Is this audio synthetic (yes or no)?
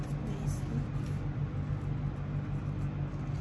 no